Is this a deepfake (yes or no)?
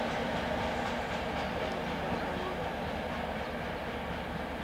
no